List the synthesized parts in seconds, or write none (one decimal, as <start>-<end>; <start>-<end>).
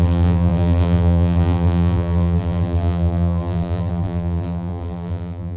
0.0-5.6